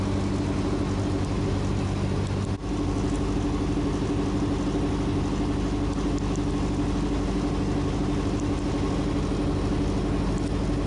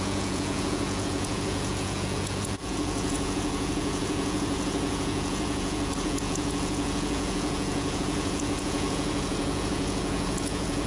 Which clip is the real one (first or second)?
first